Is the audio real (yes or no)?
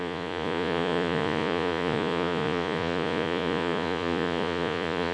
no